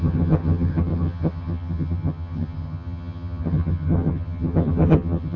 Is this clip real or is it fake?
fake